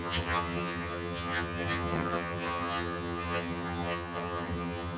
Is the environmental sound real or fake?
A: fake